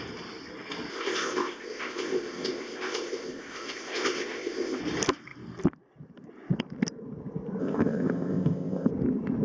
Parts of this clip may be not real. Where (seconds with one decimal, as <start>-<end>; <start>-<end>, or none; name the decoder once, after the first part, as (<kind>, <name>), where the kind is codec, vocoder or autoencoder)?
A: 0.9-4.8 (codec, ZipCodec); 7.6-8.9